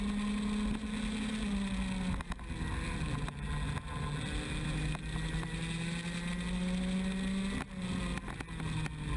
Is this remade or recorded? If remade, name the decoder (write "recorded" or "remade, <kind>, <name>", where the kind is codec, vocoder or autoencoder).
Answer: recorded